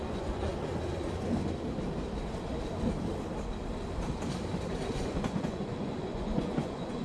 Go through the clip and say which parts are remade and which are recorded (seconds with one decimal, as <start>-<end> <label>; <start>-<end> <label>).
0.0-0.7 remade; 0.7-4.9 recorded; 4.9-7.0 remade